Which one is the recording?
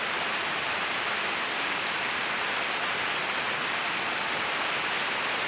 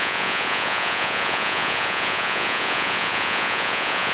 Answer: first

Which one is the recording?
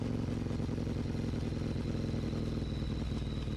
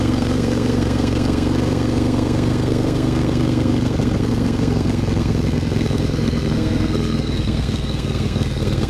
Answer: first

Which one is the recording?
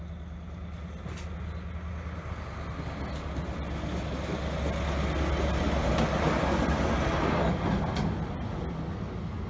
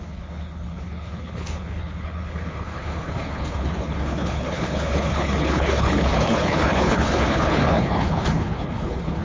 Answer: first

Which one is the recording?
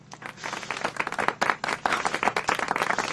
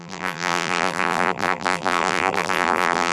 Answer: first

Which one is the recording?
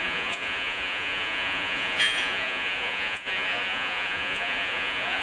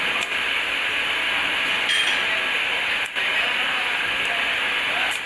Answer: second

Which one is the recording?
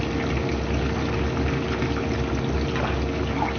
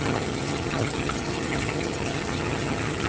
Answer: first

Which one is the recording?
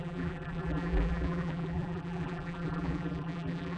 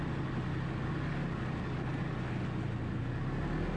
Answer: second